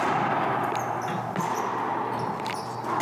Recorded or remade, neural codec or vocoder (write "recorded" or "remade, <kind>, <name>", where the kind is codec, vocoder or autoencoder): recorded